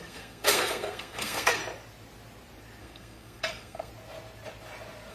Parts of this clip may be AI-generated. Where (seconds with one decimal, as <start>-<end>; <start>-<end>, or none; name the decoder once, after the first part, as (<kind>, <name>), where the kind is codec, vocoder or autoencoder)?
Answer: 0.0-1.6 (codec, SNAC); 2.8-3.9